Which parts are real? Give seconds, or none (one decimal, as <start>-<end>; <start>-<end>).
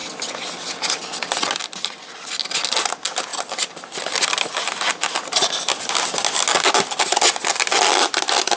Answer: 0.0-8.6